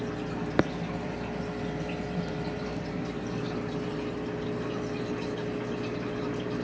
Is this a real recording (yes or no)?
yes